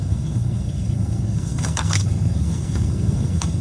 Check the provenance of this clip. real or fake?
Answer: fake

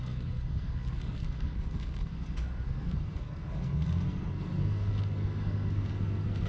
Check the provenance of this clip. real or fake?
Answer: fake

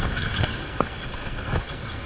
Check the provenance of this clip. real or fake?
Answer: fake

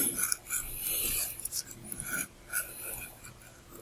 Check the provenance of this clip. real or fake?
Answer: real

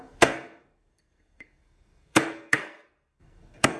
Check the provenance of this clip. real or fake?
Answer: fake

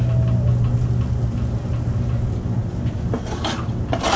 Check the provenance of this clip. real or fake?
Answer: real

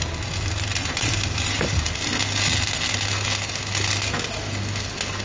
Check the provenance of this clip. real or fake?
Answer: real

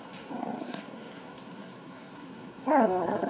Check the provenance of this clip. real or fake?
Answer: fake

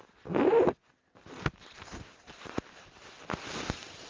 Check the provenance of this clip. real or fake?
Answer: real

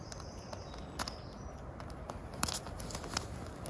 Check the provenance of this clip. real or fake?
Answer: real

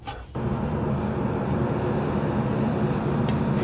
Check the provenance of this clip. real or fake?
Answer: real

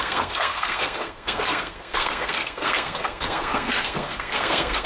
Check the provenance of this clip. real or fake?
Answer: fake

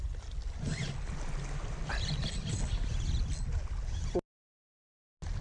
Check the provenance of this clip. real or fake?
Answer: real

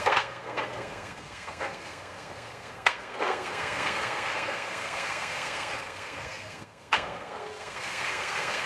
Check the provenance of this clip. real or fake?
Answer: fake